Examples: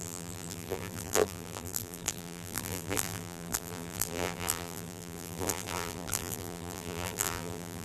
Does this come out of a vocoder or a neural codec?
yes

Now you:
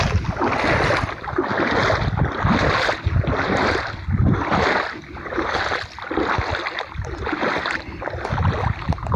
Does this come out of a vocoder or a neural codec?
no